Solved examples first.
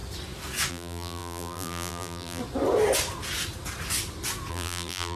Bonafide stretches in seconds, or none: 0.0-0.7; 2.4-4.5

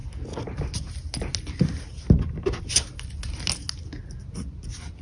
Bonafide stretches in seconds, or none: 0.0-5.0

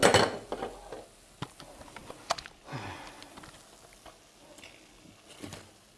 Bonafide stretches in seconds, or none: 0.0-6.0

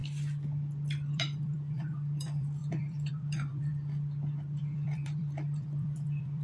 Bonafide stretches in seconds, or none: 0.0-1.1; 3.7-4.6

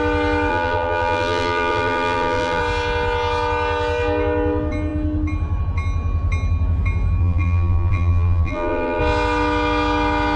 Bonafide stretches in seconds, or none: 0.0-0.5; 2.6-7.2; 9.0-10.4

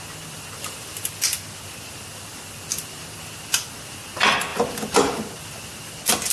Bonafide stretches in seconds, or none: 0.0-6.3